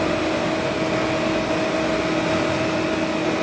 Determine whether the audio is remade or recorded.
recorded